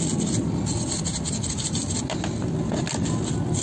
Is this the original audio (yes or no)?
yes